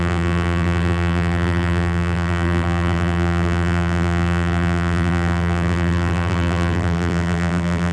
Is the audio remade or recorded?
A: remade